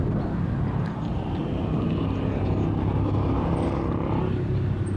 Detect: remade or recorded recorded